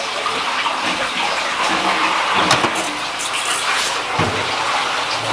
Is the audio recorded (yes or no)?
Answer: yes